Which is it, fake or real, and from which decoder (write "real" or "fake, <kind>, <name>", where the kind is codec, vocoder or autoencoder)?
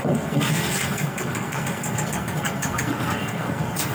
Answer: fake, codec, SNAC